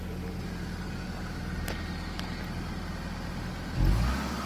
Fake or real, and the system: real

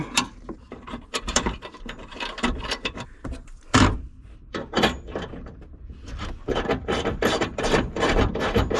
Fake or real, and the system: fake, vocoder, BigVGAN v2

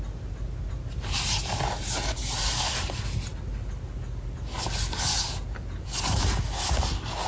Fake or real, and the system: real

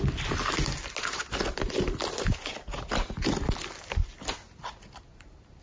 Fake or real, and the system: real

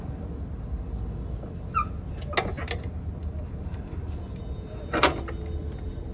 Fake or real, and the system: real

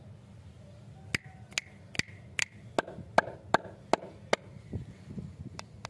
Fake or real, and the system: real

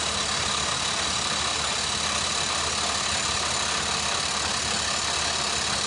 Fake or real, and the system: real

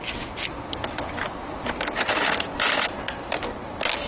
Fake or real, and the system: real